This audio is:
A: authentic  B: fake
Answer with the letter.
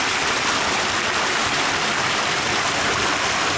A